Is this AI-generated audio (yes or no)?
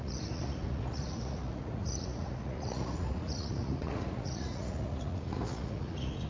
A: yes